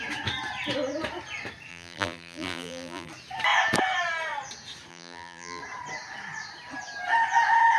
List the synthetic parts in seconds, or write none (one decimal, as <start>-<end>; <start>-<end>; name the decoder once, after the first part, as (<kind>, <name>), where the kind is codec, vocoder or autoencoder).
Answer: 1.7-3.1 (vocoder, BigVGAN v2); 4.9-5.6